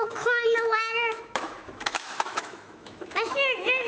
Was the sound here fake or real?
fake